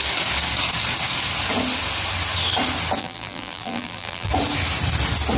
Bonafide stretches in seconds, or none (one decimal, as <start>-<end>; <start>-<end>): 0.0-3.0; 4.3-5.4